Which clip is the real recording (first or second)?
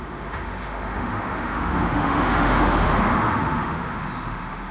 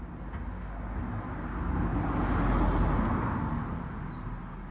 second